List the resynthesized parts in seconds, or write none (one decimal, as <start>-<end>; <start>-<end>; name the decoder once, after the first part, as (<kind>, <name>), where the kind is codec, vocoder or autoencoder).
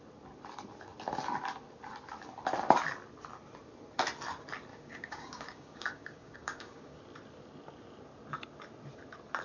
4.7-7.0 (codec, DAC)